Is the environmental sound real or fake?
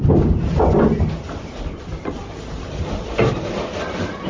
real